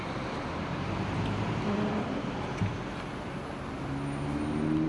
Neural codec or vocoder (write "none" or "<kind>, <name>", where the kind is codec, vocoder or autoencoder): none